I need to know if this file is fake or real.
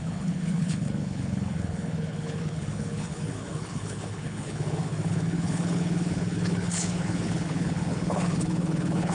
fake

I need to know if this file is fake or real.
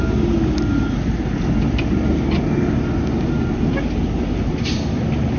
real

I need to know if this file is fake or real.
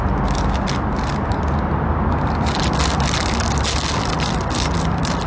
real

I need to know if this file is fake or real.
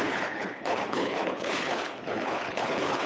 fake